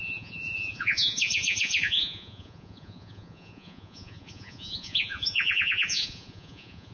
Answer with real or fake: fake